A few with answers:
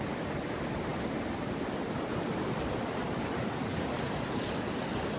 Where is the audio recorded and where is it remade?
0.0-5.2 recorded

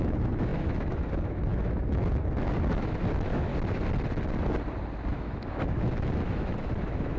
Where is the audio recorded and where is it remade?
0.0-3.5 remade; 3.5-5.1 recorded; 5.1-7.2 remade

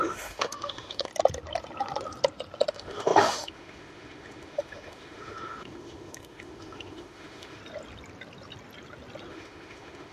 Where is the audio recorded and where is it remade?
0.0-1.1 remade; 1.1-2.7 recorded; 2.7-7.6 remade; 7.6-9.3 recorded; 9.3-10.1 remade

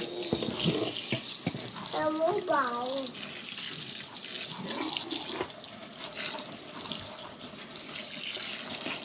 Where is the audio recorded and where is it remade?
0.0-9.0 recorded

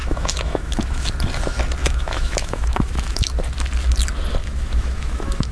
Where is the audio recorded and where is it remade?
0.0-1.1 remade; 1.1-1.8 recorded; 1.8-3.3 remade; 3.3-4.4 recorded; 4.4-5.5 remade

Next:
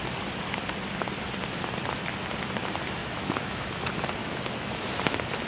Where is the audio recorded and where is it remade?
0.0-3.0 recorded; 3.0-3.8 remade; 3.8-4.2 recorded; 4.2-5.0 remade; 5.0-5.5 recorded